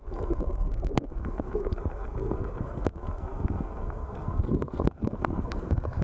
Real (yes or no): no